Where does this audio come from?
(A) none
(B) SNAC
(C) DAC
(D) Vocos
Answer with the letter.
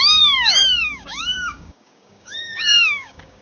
C